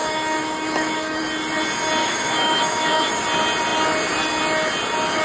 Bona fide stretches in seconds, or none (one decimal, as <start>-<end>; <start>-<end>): 1.2-2.0; 3.1-5.2